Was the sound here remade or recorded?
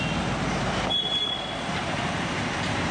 recorded